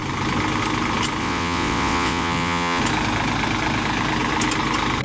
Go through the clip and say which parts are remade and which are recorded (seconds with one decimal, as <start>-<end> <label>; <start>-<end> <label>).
0.0-1.2 recorded; 1.2-2.8 remade; 2.8-5.0 recorded